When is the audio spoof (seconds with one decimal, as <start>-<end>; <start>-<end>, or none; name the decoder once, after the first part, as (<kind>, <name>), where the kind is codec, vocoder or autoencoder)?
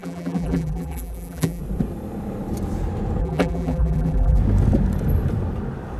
0.0-1.6 (vocoder, BigVGAN v2); 3.2-4.4